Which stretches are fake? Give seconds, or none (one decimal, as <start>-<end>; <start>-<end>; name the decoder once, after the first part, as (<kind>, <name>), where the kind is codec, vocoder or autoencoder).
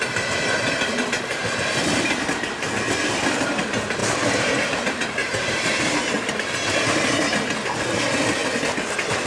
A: 1.9-2.6 (vocoder, BigVGAN v2); 4.0-4.8; 5.2-5.8